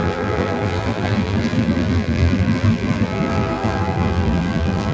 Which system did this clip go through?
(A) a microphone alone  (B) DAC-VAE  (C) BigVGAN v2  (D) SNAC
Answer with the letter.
C